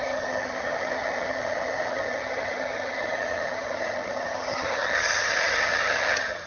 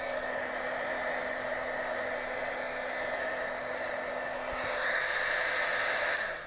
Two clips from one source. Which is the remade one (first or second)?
first